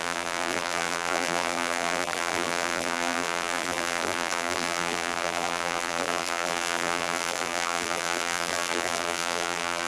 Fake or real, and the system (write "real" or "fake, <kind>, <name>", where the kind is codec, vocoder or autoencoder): fake, vocoder, BigVGAN v2